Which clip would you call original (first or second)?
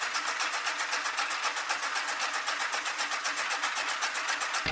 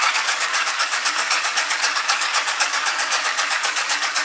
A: first